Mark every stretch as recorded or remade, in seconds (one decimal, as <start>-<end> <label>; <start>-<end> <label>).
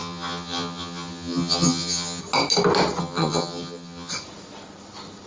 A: 0.0-2.2 remade; 2.2-3.0 recorded; 3.0-4.1 remade; 4.1-5.3 recorded